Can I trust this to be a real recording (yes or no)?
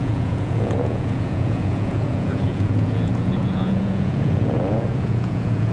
no